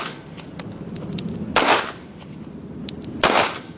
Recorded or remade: recorded